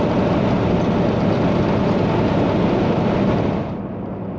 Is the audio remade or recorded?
recorded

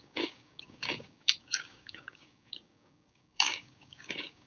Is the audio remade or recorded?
remade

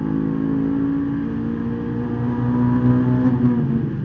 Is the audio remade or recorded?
recorded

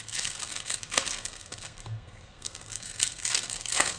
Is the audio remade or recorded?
remade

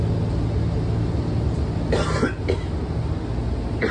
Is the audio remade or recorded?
recorded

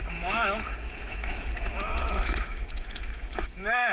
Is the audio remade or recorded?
remade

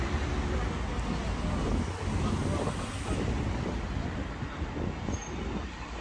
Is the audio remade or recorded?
recorded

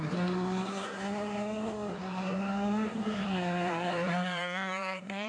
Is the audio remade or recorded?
remade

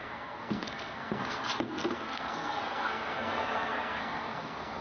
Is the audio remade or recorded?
remade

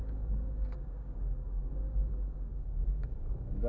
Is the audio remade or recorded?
remade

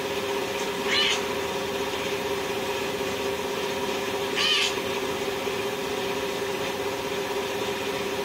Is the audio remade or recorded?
recorded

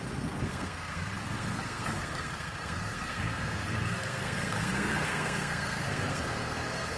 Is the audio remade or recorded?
remade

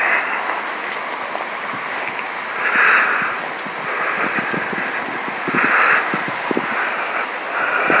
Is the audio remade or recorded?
recorded